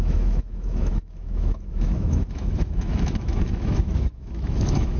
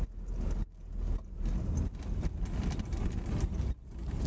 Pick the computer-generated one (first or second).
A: first